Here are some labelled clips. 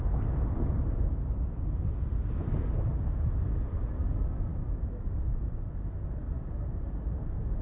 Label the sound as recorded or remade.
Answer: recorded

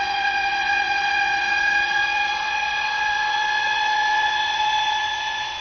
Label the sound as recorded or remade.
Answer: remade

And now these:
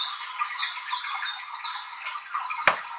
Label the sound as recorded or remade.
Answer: recorded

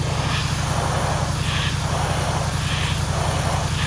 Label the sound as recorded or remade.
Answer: recorded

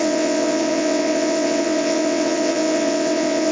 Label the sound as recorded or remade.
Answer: remade